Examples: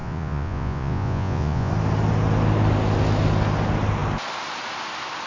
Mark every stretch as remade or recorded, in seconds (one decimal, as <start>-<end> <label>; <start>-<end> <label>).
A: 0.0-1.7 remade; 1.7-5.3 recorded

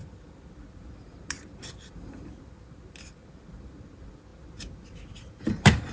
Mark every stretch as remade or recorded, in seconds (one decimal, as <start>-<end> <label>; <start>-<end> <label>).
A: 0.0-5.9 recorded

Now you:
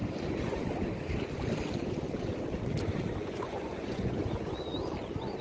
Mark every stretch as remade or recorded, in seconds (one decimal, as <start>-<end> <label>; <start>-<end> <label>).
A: 0.0-3.2 recorded; 3.2-4.2 remade; 4.2-5.4 recorded

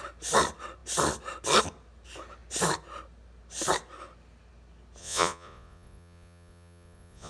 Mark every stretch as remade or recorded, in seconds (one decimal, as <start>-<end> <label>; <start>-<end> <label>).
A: 0.0-5.0 recorded; 5.0-7.3 remade

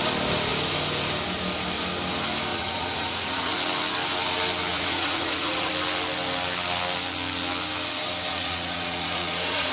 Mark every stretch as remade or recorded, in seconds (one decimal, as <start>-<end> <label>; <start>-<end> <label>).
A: 0.0-2.5 recorded; 2.5-3.5 remade; 3.5-4.7 recorded; 4.7-5.7 remade; 5.7-8.3 recorded; 8.3-9.7 remade

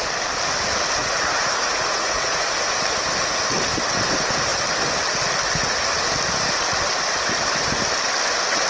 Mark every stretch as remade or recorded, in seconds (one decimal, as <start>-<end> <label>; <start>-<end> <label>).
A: 0.0-1.0 recorded; 1.0-2.5 remade; 2.5-8.7 recorded